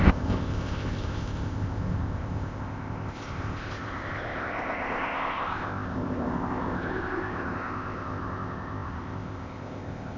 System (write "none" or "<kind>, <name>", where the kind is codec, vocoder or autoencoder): codec, ZipCodec